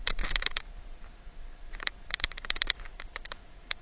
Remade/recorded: remade